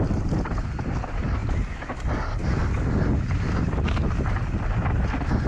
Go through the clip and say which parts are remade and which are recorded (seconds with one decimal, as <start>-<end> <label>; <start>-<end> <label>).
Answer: 0.0-5.5 recorded